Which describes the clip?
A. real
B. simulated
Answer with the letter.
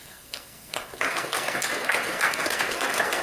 B